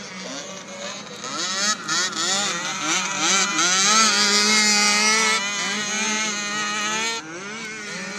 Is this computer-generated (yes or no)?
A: no